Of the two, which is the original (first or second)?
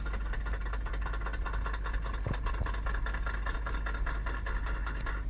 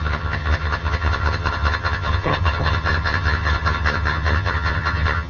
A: first